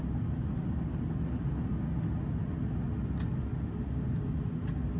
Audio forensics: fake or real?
real